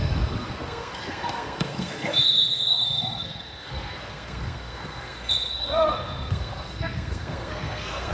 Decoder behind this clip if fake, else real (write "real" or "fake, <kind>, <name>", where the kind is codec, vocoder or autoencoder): fake, codec, SNAC